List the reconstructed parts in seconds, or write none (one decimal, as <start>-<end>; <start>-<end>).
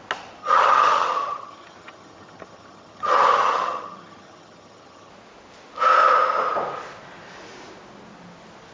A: 0.4-5.1